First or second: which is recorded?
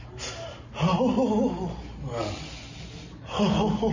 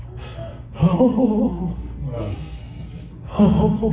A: first